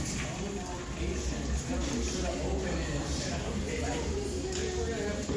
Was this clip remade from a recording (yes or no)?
no